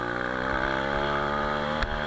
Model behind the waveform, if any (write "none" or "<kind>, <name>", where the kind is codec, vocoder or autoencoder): none